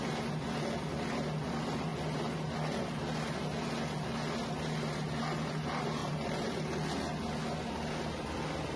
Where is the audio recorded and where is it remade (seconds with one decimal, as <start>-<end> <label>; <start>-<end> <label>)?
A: 0.0-6.0 recorded; 6.0-6.5 remade; 6.5-8.8 recorded

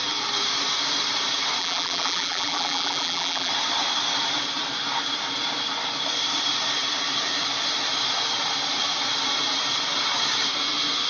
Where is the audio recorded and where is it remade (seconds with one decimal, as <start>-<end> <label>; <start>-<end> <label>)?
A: 0.0-1.6 recorded; 1.6-3.5 remade; 3.5-11.1 recorded

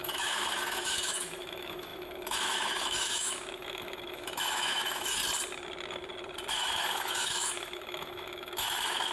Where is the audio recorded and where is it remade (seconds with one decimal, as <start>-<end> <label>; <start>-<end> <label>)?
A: 0.0-5.2 remade; 5.2-6.5 recorded; 6.5-9.1 remade

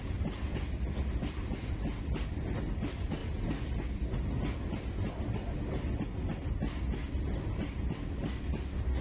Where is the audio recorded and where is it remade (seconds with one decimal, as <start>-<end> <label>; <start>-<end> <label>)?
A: 0.0-9.0 recorded

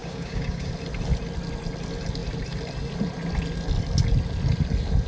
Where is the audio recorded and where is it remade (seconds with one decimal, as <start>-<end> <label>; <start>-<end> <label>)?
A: 0.0-0.7 remade; 0.7-5.1 recorded

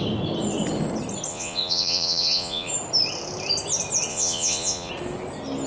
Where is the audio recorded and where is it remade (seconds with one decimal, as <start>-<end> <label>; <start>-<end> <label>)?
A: 0.0-1.3 recorded; 1.3-2.7 remade; 2.7-4.1 recorded; 4.1-4.9 remade; 4.9-5.7 recorded